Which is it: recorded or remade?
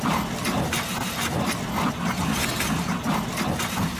recorded